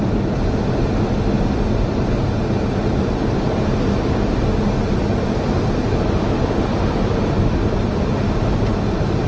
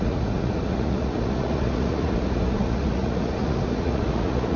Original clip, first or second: first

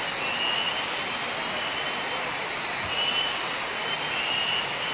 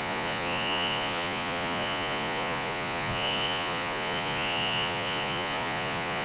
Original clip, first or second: first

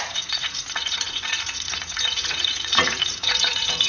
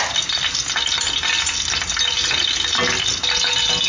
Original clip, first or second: second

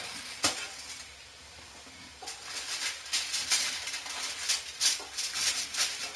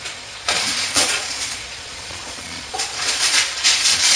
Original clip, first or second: first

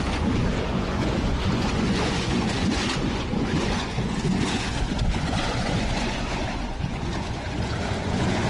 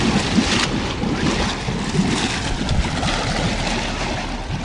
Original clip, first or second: second